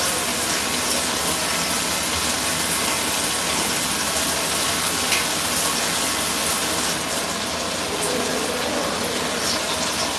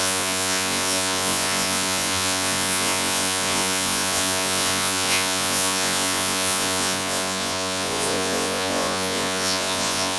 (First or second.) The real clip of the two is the first